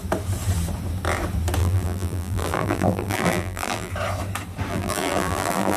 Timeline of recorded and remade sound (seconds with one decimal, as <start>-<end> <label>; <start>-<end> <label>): 0.0-1.6 recorded; 1.6-3.9 remade; 3.9-4.7 recorded; 4.7-5.8 remade